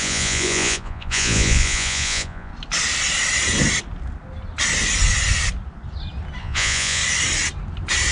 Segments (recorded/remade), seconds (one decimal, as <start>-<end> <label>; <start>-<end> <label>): 0.0-2.5 remade; 2.5-6.4 recorded; 6.4-7.0 remade; 7.0-8.1 recorded